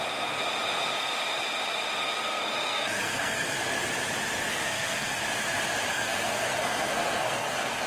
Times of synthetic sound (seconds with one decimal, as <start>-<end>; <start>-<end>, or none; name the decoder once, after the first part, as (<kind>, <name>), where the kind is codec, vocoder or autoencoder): 2.2-3.6 (codec, SNAC); 4.5-5.2; 5.9-7.9